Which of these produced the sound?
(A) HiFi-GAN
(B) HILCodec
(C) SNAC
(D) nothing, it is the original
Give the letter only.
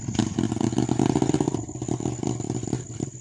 D